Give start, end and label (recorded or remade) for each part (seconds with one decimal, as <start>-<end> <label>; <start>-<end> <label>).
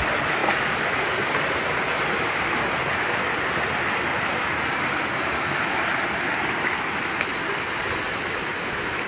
0.0-9.1 recorded